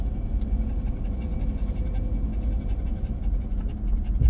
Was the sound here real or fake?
real